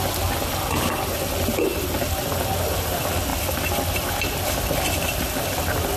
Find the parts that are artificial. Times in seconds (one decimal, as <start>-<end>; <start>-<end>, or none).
none